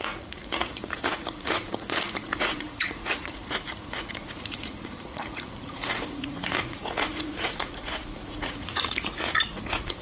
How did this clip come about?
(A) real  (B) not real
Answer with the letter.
B